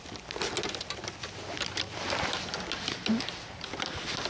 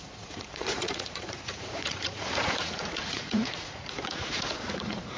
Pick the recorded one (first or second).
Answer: first